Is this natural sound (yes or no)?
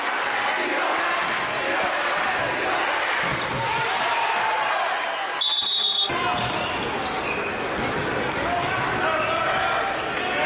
yes